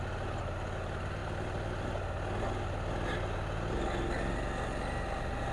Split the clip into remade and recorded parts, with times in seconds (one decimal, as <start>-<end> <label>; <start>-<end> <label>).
0.0-5.5 recorded